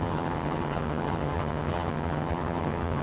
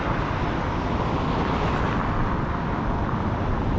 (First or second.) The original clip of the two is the second